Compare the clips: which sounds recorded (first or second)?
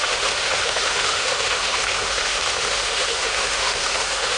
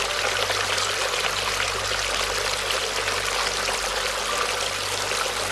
second